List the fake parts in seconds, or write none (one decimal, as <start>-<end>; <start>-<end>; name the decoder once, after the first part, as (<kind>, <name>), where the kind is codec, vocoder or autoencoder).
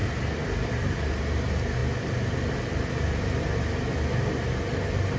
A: none